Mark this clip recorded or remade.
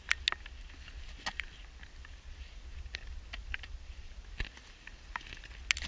recorded